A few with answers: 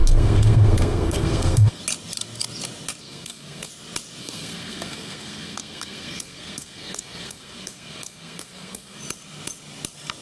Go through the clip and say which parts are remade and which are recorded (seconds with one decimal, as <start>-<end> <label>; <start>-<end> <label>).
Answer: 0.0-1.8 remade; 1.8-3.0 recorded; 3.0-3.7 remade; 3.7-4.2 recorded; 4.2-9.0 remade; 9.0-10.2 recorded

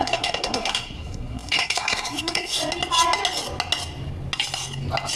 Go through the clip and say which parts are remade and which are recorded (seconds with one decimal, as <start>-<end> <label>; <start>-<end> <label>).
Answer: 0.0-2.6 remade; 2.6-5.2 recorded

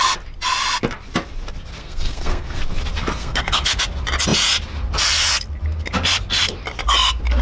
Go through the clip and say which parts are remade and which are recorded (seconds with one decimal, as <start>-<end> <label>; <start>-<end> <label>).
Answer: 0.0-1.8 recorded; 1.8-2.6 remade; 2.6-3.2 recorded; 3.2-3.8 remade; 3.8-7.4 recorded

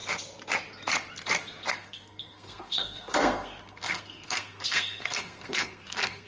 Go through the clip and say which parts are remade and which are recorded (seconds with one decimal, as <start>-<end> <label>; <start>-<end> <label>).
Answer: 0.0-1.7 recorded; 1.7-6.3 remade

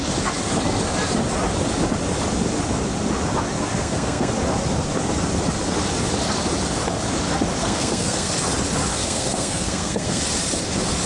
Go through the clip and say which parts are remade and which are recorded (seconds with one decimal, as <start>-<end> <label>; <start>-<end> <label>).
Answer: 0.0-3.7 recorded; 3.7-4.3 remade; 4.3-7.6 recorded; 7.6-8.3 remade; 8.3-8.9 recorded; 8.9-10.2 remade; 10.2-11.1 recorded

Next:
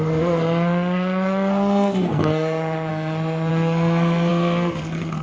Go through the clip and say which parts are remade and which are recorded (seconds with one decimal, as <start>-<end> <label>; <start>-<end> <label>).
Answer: 0.0-5.2 remade

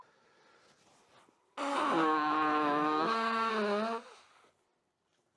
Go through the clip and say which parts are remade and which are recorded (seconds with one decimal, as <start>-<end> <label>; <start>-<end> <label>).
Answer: 0.0-1.7 recorded; 1.7-3.5 remade; 3.5-5.4 recorded

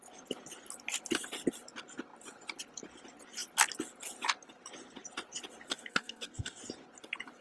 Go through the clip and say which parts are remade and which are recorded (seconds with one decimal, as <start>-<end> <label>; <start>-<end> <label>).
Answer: 0.0-5.7 recorded; 5.7-6.6 remade; 6.6-7.4 recorded